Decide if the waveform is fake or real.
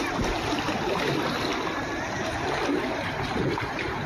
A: real